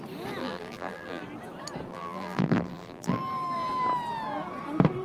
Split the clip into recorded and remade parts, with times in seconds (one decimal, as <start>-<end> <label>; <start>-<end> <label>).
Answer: 0.0-0.4 recorded; 0.4-1.2 remade; 1.2-1.9 recorded; 1.9-3.2 remade; 3.2-5.0 recorded